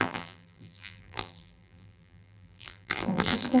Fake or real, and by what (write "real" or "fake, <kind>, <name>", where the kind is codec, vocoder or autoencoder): fake, vocoder, BigVGAN v2